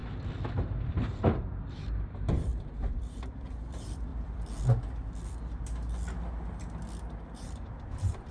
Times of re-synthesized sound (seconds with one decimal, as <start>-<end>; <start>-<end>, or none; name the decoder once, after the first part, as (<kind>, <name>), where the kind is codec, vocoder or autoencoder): 0.9-4.1 (vocoder, BigVGAN v2); 7.2-8.3